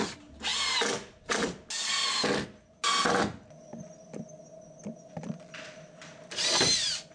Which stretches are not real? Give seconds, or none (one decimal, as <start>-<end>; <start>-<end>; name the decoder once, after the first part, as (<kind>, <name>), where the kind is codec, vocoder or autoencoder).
none